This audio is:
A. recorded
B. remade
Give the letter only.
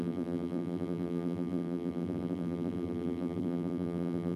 B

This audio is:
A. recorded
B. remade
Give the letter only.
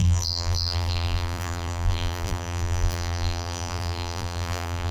B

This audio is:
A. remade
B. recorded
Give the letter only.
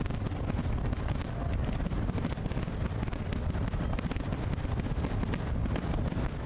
B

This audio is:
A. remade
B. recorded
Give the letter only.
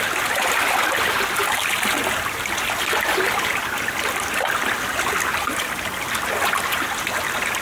B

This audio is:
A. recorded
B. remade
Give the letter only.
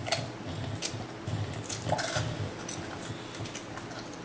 A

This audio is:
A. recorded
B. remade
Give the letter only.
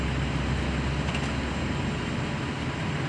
A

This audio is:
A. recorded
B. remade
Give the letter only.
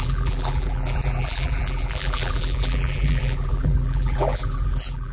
B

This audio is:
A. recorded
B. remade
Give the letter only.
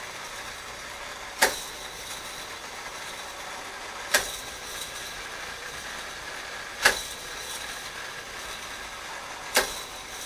A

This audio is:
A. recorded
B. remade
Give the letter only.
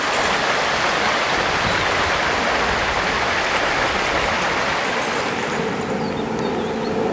A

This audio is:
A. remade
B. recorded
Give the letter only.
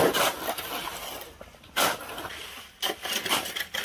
A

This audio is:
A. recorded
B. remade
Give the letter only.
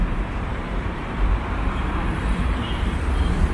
B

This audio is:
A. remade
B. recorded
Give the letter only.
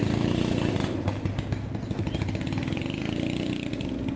A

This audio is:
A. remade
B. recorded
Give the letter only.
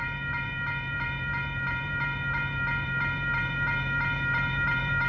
A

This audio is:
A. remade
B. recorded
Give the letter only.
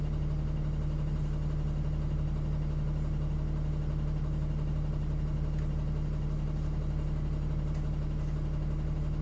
B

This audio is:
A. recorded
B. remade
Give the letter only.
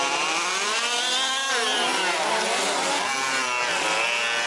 A